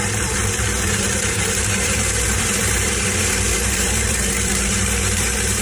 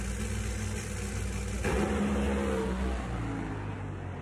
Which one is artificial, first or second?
first